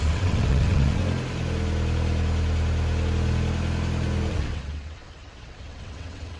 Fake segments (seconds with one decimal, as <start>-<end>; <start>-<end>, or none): 0.0-1.0; 4.3-6.4